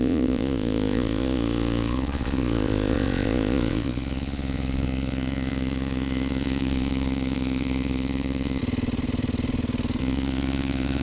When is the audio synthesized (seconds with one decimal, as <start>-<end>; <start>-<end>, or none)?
0.0-8.6; 10.0-11.0